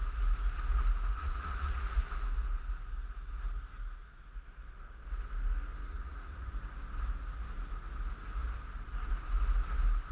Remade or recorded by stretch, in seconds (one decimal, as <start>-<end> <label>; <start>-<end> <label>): 0.0-1.2 recorded; 1.2-2.0 remade; 2.0-5.8 recorded; 5.8-6.5 remade; 6.5-10.1 recorded